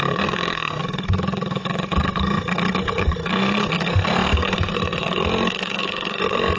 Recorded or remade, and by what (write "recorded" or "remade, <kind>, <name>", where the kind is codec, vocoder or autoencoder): remade, codec, SNAC